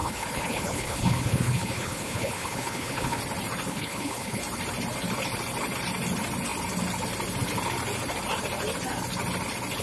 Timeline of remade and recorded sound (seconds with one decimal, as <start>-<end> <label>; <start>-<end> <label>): 0.0-3.2 remade; 3.2-3.7 recorded; 3.7-4.4 remade; 4.4-9.8 recorded